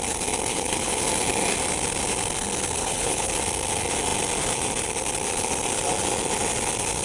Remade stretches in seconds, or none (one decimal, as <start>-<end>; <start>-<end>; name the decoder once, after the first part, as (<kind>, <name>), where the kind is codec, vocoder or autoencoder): 0.5-1.0 (codec, HILCodec); 2.8-3.3